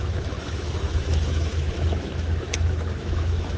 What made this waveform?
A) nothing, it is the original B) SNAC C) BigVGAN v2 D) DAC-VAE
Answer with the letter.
D